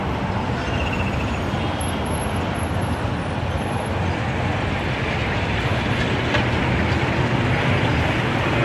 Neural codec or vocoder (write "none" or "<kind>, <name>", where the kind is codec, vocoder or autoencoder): none